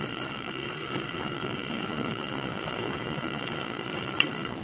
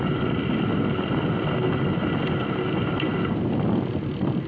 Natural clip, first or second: second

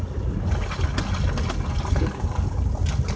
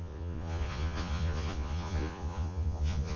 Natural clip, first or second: first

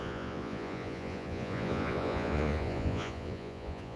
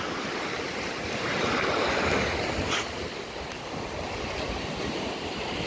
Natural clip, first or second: second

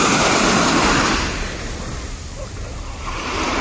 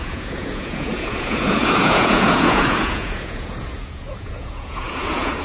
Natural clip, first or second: first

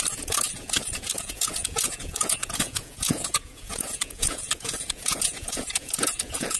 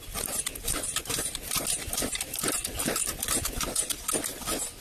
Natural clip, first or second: second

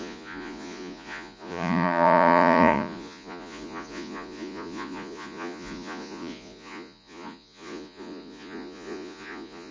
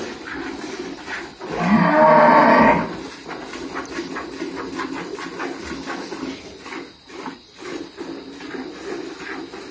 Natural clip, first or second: second